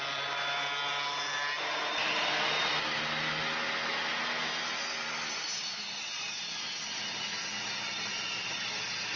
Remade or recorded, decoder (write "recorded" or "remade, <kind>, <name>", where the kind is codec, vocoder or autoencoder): recorded